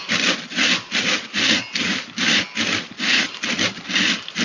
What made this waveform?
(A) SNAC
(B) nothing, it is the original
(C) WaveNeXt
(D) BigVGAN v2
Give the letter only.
B